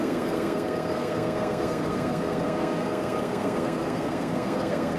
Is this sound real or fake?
fake